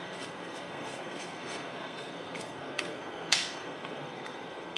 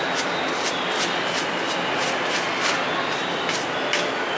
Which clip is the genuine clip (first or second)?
second